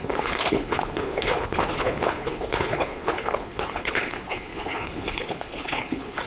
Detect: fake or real fake